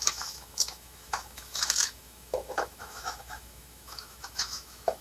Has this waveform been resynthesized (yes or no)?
yes